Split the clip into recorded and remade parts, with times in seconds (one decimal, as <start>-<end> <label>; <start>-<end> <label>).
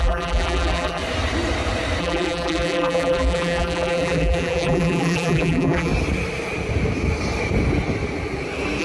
0.0-1.0 remade; 1.0-2.0 recorded; 2.0-5.9 remade; 5.9-8.8 recorded